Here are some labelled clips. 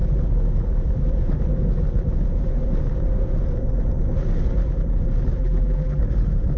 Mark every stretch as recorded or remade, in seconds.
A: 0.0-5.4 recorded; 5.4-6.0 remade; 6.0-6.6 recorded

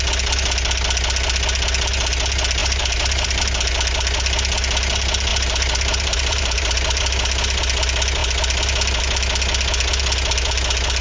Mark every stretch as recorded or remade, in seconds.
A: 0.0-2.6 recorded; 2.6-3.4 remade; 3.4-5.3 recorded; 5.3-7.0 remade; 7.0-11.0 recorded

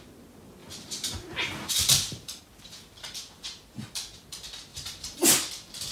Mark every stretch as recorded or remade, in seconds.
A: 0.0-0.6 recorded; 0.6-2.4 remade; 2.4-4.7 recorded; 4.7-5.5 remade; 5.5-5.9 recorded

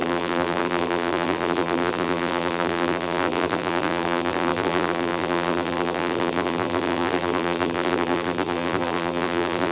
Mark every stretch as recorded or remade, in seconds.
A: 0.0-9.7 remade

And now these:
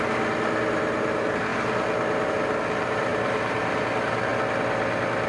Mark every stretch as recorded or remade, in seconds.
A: 0.0-5.3 recorded

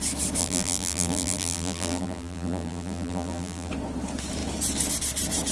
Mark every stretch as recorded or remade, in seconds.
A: 0.0-0.4 recorded; 0.4-3.7 remade; 3.7-5.5 recorded

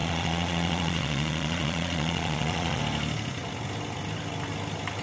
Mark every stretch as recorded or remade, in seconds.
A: 0.0-2.8 remade; 2.8-5.0 recorded